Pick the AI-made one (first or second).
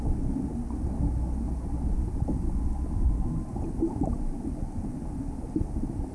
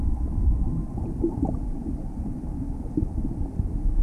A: second